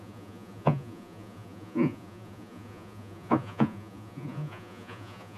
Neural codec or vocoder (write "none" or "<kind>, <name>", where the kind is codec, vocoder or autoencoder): vocoder, Vocos